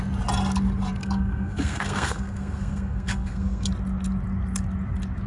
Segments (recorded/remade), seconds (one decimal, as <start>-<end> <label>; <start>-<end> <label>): 0.0-1.0 recorded; 1.0-3.7 remade; 3.7-5.3 recorded